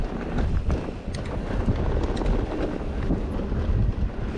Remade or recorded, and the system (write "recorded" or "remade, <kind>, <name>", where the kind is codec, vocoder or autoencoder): recorded